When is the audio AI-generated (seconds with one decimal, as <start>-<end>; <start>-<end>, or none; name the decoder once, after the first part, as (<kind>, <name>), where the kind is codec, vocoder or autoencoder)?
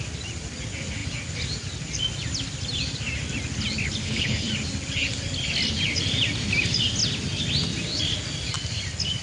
4.0-4.5 (codec, HILCodec)